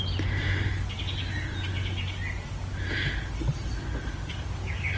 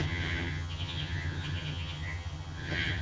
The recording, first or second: first